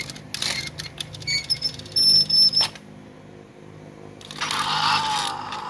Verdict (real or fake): real